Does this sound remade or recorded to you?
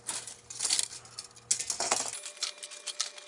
recorded